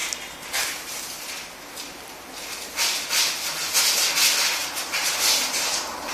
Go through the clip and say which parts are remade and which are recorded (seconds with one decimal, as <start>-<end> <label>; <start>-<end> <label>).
0.0-4.6 recorded; 4.6-6.1 remade